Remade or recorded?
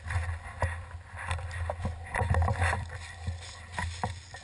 recorded